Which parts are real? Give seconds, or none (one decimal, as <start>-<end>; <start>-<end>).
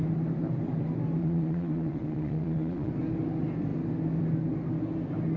0.0-1.2; 2.9-5.4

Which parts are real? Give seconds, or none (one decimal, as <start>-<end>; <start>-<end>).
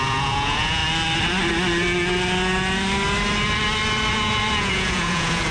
0.8-4.1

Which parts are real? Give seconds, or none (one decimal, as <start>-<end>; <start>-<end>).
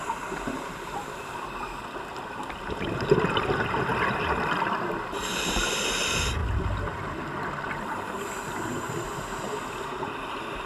0.0-10.7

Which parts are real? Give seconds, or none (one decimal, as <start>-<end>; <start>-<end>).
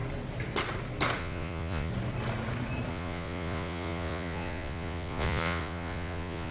0.0-1.2; 1.9-2.9